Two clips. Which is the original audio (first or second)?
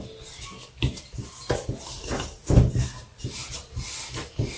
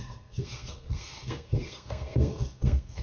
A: first